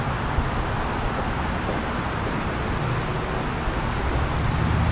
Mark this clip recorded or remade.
recorded